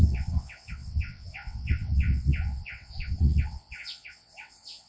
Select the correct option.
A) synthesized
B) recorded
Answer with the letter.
A